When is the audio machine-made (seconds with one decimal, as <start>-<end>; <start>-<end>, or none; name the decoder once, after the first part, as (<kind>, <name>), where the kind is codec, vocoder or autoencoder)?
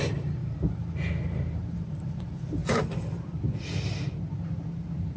0.0-0.4 (vocoder, BigVGAN v2); 1.1-2.6; 4.8-5.2